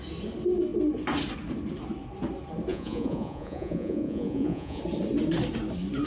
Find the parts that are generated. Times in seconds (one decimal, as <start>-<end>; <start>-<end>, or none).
2.7-4.8